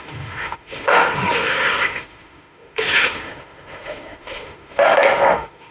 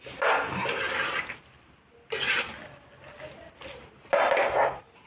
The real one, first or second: second